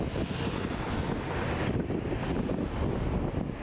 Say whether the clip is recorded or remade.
recorded